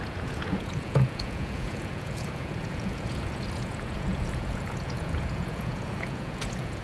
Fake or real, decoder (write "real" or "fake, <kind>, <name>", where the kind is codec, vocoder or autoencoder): fake, vocoder, Vocos